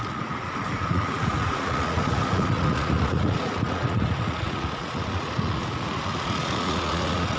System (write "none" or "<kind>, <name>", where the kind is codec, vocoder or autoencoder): vocoder, Vocos